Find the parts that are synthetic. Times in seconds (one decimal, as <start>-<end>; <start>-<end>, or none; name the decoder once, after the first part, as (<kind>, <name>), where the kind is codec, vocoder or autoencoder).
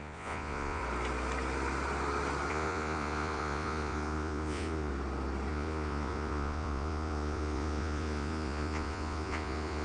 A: 0.0-0.8 (vocoder, Vocos); 2.5-4.9; 5.5-9.8